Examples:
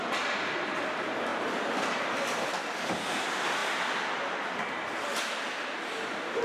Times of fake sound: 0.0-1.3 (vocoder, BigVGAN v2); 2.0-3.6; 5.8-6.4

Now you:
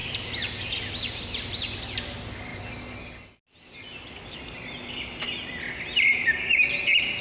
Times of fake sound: none

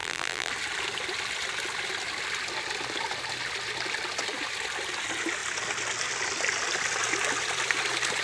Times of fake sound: 0.0-0.5 (vocoder, BigVGAN v2)

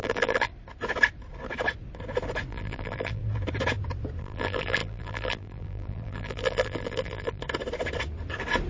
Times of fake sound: 0.0-0.5 (vocoder, BigVGAN v2); 2.5-3.2; 4.2-7.4

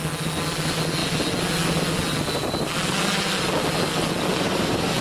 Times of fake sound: 4.3-5.0 (vocoder, BigVGAN v2)

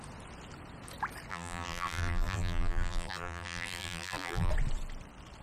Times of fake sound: 1.3-4.5 (vocoder, BigVGAN v2)

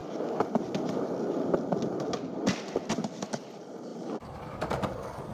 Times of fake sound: 3.9-5.3 (vocoder, BigVGAN v2)

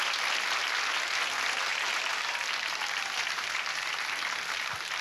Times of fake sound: none